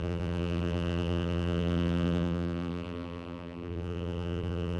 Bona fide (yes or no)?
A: no